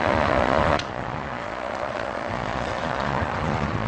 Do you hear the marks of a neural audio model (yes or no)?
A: yes